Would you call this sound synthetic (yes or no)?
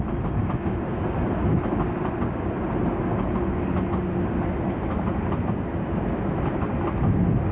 no